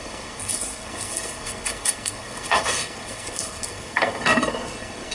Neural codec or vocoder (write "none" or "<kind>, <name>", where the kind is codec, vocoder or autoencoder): codec, SNAC